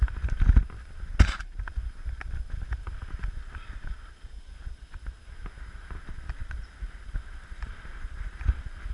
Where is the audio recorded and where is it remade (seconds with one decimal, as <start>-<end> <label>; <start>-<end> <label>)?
0.0-8.9 recorded